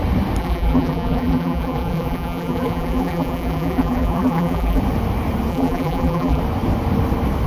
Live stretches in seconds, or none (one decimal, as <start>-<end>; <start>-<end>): 0.0-0.4; 4.8-5.5; 6.4-7.5